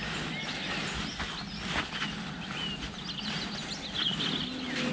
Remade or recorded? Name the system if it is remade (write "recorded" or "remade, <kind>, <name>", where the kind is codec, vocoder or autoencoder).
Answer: recorded